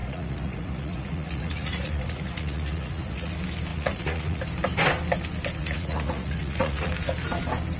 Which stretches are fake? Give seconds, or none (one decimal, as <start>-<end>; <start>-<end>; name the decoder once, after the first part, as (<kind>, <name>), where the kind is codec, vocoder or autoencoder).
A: 0.0-3.3 (vocoder, Vocos); 3.7-4.4; 5.6-6.9